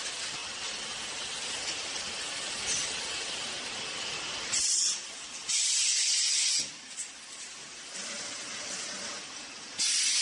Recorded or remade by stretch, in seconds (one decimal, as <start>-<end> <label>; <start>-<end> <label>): 0.0-10.2 recorded